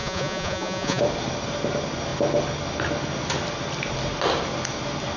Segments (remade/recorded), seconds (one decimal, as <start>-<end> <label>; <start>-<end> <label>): 0.0-1.0 remade; 1.0-5.2 recorded